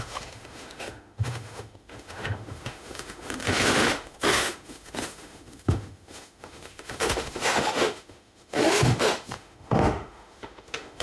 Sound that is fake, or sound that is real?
fake